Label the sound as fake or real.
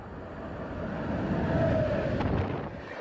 real